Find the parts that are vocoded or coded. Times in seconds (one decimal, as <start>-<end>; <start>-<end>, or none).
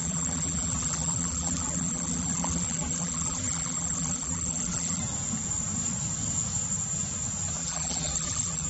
0.0-5.0; 7.6-8.7